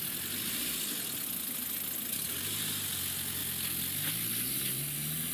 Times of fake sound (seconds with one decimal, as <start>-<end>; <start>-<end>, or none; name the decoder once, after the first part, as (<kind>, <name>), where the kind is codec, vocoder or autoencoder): none